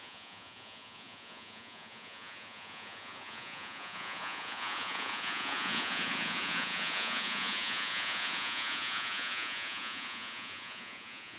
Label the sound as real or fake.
fake